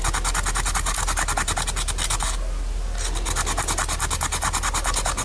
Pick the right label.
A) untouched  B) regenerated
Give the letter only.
A